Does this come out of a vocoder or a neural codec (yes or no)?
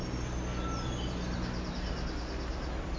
no